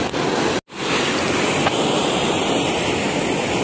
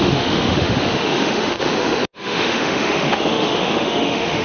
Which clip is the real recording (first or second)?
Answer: first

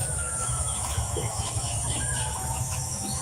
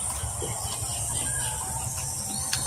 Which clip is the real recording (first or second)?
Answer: second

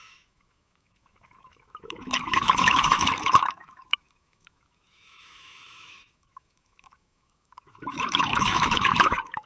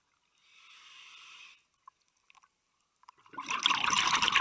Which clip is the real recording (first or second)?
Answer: second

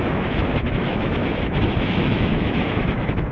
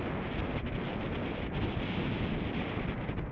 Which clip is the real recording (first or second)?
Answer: second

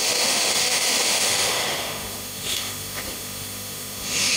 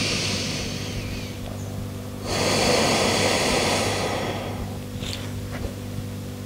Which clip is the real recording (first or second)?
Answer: second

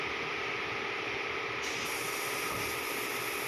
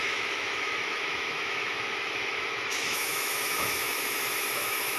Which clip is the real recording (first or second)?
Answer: first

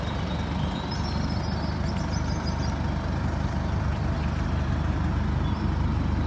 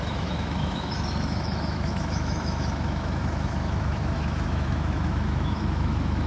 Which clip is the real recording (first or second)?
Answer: first